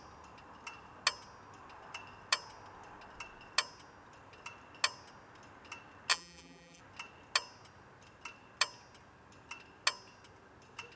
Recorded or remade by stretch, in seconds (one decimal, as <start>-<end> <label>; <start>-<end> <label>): 0.0-6.1 recorded; 6.1-6.8 remade; 6.8-11.0 recorded